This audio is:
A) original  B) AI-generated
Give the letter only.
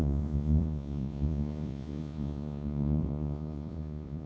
B